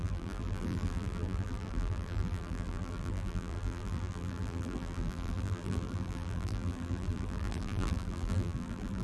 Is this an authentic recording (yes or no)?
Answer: no